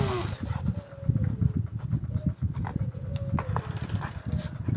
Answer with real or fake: real